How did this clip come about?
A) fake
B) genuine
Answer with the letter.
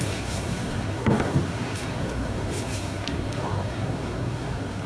A